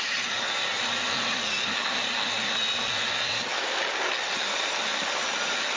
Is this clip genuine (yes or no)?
yes